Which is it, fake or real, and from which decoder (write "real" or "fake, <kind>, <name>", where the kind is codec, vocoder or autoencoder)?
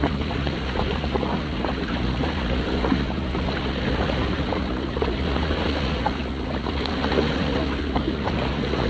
fake, vocoder, Vocos